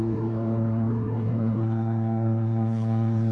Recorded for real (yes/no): no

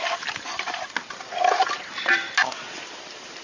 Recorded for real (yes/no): yes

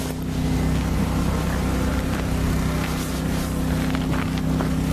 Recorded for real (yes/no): yes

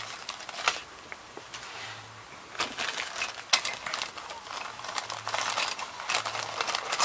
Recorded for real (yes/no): yes